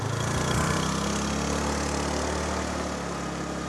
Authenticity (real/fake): real